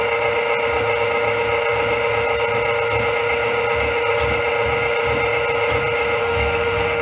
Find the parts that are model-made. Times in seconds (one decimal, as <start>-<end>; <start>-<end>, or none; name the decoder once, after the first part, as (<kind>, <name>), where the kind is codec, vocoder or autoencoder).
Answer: 6.2-7.0 (autoencoder, DAC-VAE)